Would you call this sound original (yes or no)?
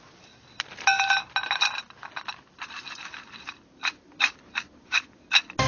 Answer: yes